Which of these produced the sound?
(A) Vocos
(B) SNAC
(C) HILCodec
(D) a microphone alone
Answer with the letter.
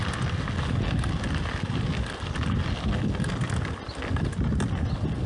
D